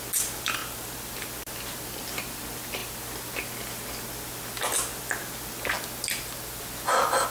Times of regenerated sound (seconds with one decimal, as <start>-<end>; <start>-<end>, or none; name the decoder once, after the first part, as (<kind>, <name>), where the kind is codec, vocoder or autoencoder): none